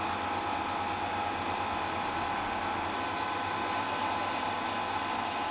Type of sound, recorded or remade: recorded